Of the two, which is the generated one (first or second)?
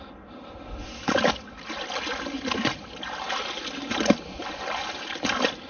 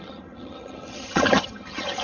second